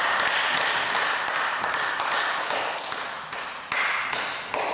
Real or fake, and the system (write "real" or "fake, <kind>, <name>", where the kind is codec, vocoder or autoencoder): real